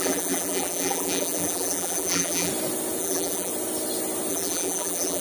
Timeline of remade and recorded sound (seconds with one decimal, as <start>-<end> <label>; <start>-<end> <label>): 0.0-2.5 remade; 2.5-3.0 recorded; 3.0-3.5 remade; 3.5-4.3 recorded; 4.3-5.2 remade